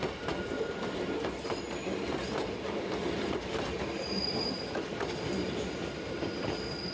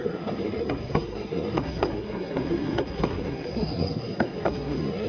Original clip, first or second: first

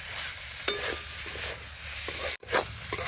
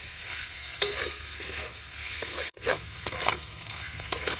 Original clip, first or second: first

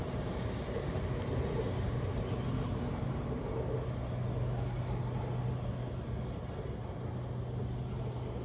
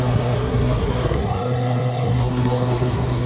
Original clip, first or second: first